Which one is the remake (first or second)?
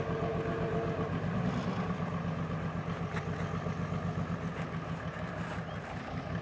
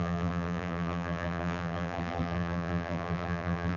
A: second